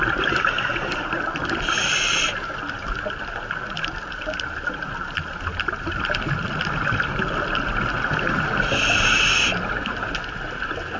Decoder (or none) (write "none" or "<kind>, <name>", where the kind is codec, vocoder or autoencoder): none